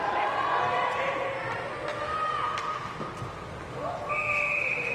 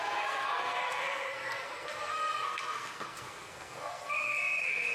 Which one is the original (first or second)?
first